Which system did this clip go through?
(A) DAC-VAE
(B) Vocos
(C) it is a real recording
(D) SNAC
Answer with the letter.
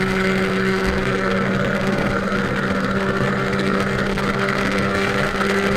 D